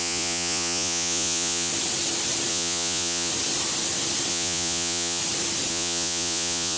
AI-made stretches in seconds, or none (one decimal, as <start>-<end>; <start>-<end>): 0.0-1.7; 2.5-3.3; 4.3-5.2; 5.7-6.8